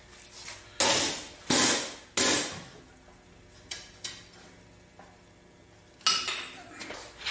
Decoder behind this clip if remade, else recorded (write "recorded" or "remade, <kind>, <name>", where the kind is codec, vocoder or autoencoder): recorded